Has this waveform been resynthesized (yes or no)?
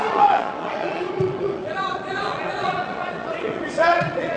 yes